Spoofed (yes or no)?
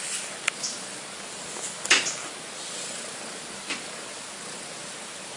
no